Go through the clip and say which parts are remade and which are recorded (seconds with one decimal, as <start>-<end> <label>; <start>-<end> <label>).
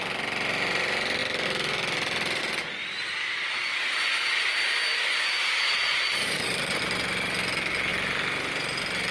0.0-2.8 recorded; 2.8-4.0 remade; 4.0-4.9 recorded; 4.9-6.8 remade; 6.8-9.1 recorded